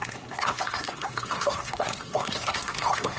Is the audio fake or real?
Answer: fake